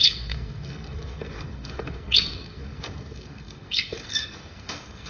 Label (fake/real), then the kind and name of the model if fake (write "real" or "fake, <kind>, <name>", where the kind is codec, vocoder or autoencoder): fake, codec, SNAC